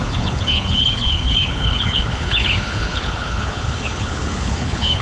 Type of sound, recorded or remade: remade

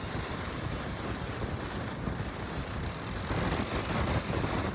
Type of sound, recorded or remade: recorded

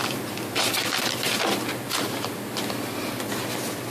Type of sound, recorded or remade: recorded